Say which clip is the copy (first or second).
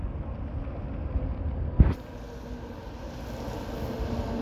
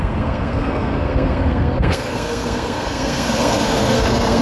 second